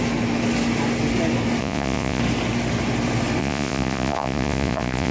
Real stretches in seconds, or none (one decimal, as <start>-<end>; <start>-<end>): 0.0-1.6; 2.2-3.4